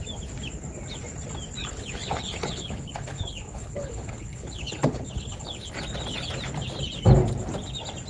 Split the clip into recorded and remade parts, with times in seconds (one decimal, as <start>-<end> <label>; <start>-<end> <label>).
0.0-1.6 recorded; 1.6-5.7 remade; 5.7-8.1 recorded